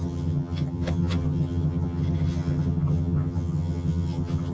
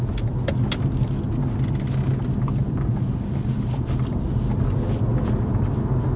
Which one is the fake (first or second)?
first